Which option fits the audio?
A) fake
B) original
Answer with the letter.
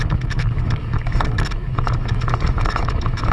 A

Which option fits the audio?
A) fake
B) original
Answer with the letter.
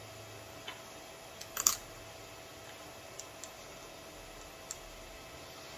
B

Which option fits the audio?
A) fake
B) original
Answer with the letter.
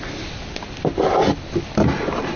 B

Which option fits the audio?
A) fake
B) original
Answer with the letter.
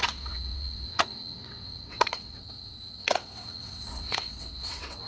A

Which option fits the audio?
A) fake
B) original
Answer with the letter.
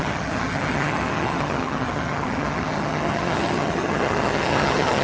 A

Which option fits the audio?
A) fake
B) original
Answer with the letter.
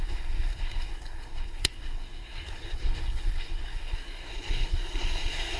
A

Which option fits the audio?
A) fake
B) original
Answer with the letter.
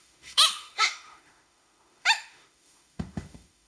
A